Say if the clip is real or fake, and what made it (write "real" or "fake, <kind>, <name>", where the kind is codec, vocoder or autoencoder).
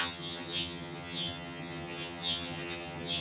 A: fake, vocoder, HiFi-GAN